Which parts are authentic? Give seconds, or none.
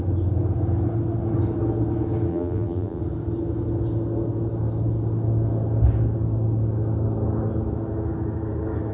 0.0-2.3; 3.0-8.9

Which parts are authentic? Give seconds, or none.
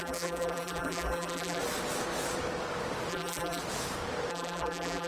1.6-3.1; 3.6-4.3